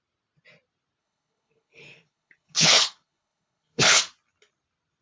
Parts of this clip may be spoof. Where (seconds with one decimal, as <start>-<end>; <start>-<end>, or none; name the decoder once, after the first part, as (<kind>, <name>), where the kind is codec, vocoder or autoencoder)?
1.0-4.0 (codec, HILCodec)